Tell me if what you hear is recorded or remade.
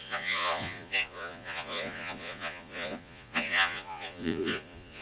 remade